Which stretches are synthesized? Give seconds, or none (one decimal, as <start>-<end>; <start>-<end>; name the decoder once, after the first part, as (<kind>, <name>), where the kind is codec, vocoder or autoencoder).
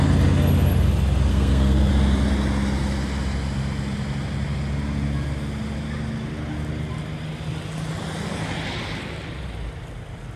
1.3-1.9 (codec, SNAC)